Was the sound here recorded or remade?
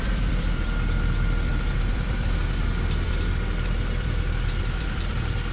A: remade